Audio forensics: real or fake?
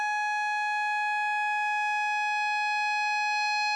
real